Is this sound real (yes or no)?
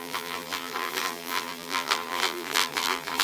no